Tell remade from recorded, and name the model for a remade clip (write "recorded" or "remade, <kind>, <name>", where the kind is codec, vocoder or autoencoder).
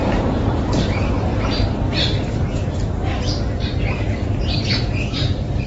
remade, vocoder, BigVGAN v2